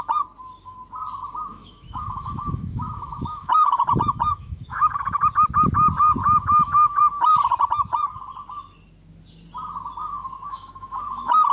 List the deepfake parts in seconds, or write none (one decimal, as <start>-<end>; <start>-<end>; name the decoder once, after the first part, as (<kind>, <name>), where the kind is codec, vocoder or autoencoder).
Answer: 1.5-5.2 (autoencoder, DAC-VAE); 6.2-7.0; 10.0-11.5

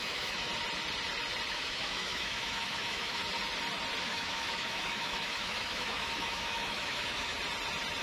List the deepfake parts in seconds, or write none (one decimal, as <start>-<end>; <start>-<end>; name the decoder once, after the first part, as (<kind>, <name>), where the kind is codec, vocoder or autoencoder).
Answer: 0.0-0.5 (autoencoder, DAC-VAE); 1.5-3.2; 4.0-7.3

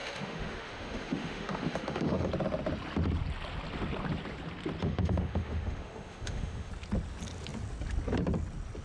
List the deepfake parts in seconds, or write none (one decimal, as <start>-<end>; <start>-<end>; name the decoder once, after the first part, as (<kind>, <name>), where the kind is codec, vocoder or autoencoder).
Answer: 0.0-2.3 (autoencoder, DAC-VAE); 4.8-6.7

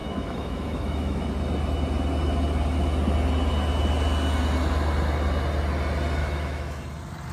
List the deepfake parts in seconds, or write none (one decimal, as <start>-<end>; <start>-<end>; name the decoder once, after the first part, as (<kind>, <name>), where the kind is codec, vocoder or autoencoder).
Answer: 0.0-1.3 (autoencoder, DAC-VAE); 6.2-6.8

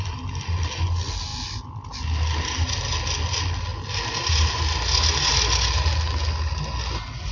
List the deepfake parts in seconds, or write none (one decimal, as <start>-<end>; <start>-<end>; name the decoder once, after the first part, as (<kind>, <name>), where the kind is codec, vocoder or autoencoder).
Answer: none

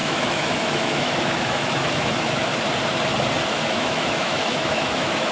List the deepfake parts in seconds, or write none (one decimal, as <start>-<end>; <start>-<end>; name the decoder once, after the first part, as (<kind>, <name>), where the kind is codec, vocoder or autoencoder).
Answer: 0.0-2.5 (autoencoder, DAC-VAE); 3.5-5.3

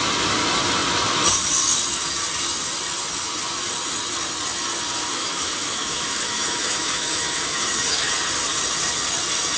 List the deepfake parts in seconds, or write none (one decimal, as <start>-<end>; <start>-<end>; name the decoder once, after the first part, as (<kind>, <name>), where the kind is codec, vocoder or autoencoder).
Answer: 5.2-8.1 (autoencoder, DAC-VAE)